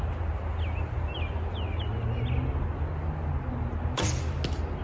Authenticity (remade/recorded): recorded